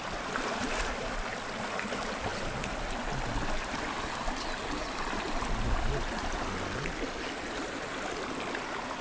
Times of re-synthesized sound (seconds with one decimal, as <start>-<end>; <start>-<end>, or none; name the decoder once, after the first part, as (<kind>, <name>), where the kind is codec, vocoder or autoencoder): none

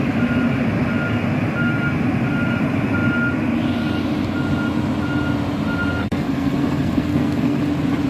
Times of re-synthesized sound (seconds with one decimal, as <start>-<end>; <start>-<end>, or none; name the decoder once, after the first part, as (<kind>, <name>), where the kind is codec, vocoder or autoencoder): 6.0-7.6 (codec, SNAC)

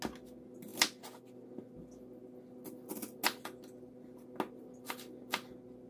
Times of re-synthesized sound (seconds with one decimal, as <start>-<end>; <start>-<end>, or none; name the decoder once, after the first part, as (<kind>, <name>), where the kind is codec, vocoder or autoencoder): none

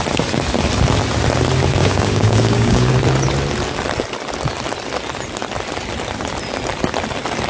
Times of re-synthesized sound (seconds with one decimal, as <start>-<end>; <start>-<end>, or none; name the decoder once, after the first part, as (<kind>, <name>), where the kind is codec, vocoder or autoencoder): 1.8-2.9 (codec, DAC)

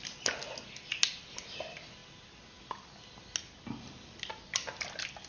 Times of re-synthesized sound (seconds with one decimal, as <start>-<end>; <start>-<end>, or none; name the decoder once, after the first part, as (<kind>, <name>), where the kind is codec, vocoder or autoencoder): none